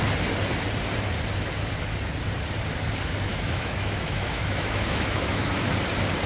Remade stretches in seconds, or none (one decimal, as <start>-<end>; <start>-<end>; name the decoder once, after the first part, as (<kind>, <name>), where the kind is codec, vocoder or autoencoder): 3.3-5.7 (autoencoder, DAC-VAE)